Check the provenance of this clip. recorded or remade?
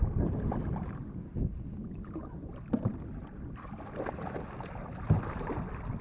recorded